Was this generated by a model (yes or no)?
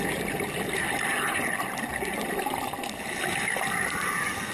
no